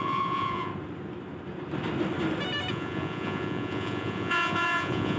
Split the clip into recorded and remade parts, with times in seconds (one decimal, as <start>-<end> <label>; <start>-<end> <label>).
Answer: 0.0-0.7 remade; 0.7-2.7 recorded; 2.7-5.2 remade